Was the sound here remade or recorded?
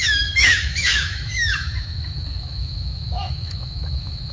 remade